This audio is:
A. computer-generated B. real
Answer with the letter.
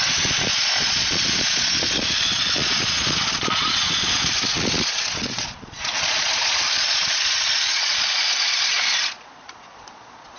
A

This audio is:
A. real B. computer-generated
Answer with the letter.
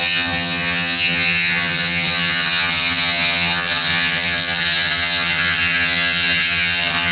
B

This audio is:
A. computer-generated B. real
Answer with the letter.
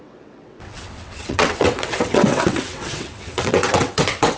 A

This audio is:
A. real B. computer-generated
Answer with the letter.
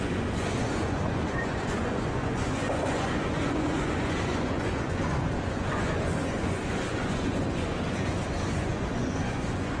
B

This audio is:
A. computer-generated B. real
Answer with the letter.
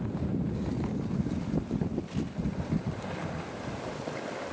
B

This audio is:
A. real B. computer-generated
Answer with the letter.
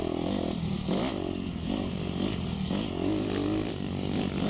A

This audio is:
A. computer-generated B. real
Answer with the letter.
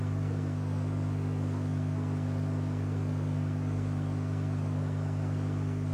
A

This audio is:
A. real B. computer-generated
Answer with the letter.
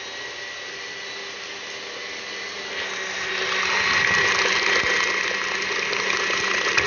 A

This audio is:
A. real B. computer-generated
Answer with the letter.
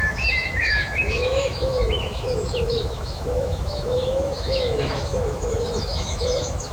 B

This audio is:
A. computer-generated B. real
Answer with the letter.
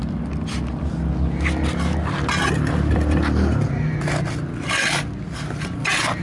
B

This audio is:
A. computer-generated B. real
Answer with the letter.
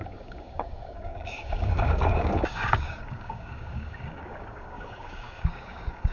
A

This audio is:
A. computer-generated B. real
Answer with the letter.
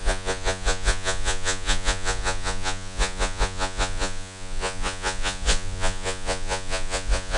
A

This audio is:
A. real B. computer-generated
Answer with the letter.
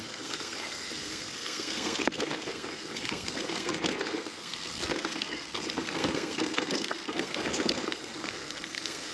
B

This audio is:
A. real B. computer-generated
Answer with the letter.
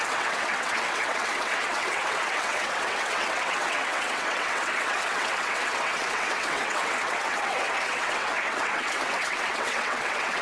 B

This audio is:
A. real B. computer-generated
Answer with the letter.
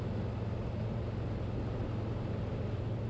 A